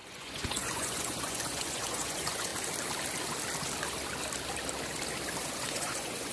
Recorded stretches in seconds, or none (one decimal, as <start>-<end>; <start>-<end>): 2.5-5.5

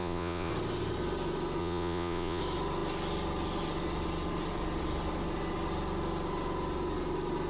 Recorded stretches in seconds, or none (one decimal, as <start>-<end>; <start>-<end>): 0.5-1.6; 2.4-7.5

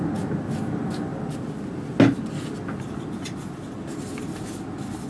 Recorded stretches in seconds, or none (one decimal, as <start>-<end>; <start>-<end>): 0.0-5.1

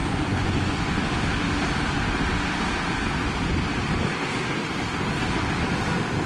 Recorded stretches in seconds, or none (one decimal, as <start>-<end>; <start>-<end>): 1.0-6.3

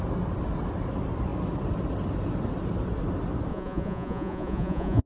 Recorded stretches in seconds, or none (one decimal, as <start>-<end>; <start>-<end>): 0.0-3.5

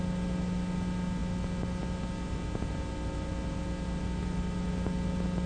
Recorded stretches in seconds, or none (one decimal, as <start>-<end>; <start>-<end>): 0.0-5.5